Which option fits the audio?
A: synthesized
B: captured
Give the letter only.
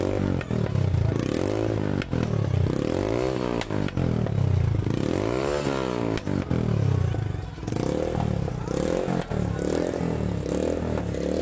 B